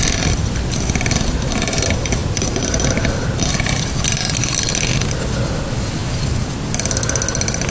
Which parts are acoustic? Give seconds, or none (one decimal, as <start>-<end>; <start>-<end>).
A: 0.0-7.7